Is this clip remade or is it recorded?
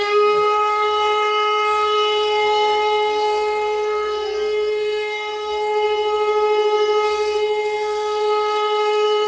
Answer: remade